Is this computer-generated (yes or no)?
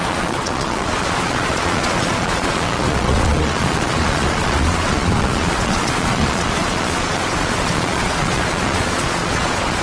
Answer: yes